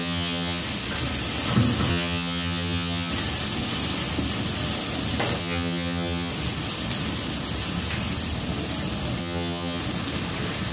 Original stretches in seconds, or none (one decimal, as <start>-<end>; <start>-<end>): 0.6-1.9; 3.1-5.4; 6.3-9.2; 9.8-10.7